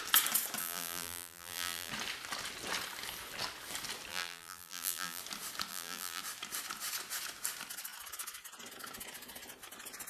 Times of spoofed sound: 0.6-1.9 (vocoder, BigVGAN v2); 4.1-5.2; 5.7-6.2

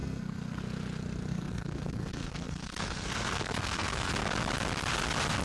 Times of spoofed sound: 0.0-0.6 (codec, SNAC); 1.3-4.1

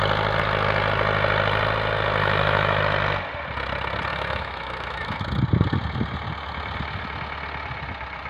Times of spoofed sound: 2.2-2.8 (autoencoder, DAC-VAE); 4.1-5.2

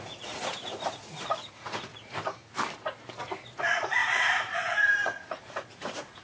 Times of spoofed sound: 0.0-1.9 (vocoder, Vocos); 3.6-6.2

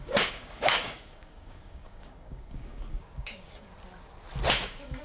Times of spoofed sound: 0.0-3.7 (codec, DAC); 4.5-5.0

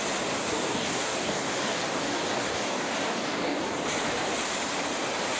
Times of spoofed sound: 0.4-3.6 (codec, DAC)

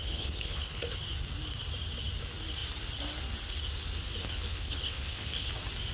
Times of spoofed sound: 0.0-0.9 (codec, HILCodec); 4.2-5.5

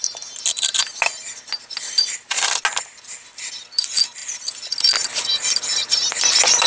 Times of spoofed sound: none